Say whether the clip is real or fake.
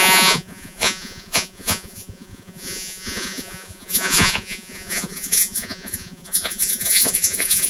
fake